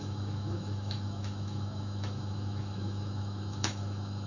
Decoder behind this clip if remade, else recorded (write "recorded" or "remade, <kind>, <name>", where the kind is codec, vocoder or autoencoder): remade, autoencoder, DAC-VAE